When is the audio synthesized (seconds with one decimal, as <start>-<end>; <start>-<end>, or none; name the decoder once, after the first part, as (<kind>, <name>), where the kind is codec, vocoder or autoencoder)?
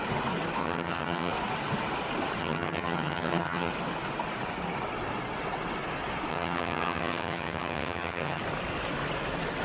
0.6-1.3 (vocoder, HiFi-GAN); 2.4-3.7; 6.3-8.4